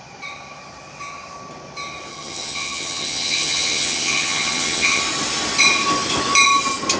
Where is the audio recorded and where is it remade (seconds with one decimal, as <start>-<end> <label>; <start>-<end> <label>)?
0.0-2.1 recorded; 2.1-5.0 remade; 5.0-7.0 recorded